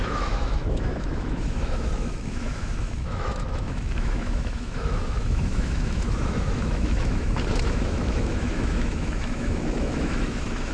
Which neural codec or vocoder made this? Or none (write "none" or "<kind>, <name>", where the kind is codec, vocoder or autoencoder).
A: autoencoder, DAC-VAE